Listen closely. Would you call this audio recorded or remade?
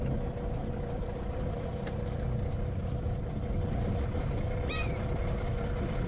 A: recorded